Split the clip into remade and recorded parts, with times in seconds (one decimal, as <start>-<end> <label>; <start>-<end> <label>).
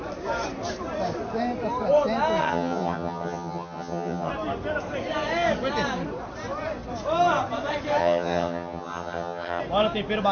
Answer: 0.0-2.4 recorded; 2.4-4.3 remade; 4.3-8.0 recorded; 8.0-9.6 remade; 9.6-10.3 recorded